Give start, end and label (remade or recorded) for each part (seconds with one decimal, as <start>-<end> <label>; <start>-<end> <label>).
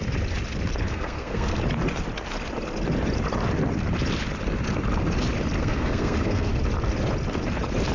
0.0-0.9 recorded; 0.9-1.6 remade; 1.6-5.6 recorded; 5.6-6.5 remade; 6.5-7.9 recorded